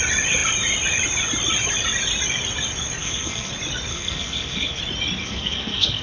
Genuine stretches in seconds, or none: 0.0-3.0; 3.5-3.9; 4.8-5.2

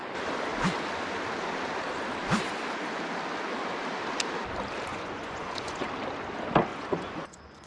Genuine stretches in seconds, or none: 0.0-4.9; 5.9-6.7

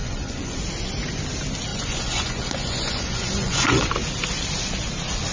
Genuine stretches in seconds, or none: 0.6-1.7; 3.9-5.3